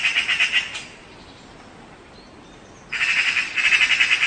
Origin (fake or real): real